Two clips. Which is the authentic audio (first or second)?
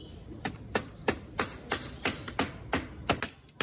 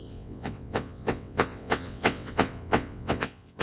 first